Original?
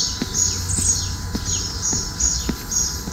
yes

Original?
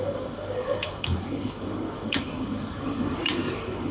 no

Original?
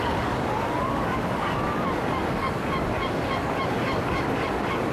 no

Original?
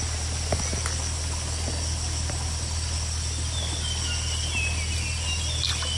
yes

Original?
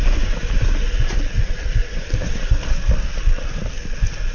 yes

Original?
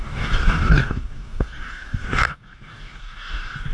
no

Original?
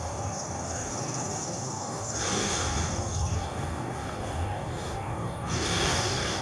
no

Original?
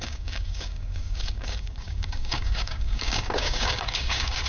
no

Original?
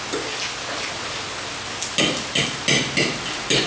yes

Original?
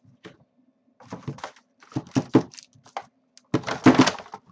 yes